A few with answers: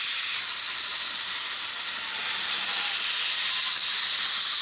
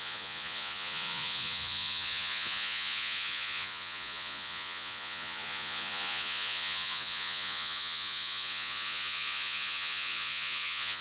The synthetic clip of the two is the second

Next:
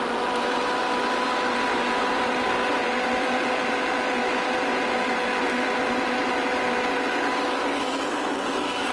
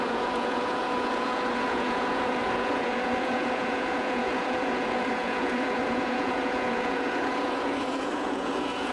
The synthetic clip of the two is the second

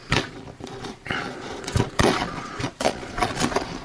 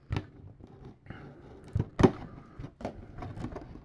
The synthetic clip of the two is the first